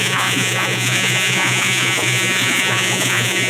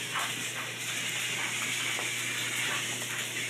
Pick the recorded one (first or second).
second